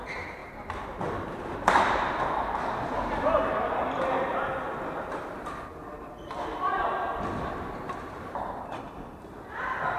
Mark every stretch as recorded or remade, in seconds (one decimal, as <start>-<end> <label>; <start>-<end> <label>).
0.0-10.0 recorded